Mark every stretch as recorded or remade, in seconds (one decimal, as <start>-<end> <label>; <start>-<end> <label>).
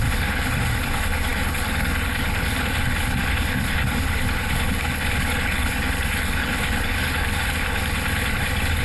0.0-8.8 remade